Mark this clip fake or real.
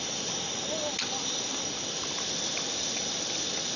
real